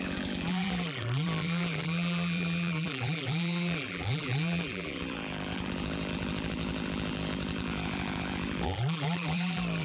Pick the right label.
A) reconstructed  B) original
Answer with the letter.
A